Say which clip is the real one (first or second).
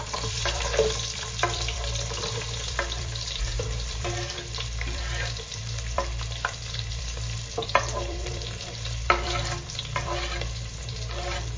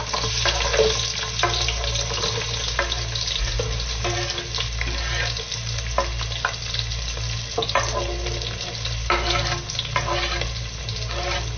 second